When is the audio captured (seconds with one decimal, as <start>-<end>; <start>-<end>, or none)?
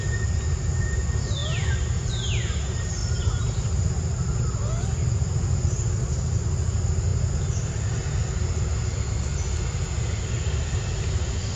0.0-1.4; 2.1-11.6